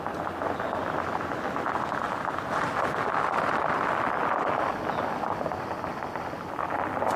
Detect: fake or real real